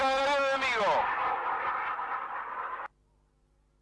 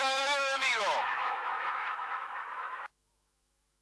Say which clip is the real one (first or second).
first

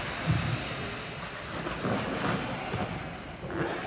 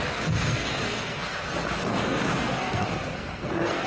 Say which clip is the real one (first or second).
first